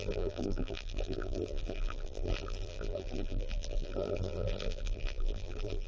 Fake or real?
fake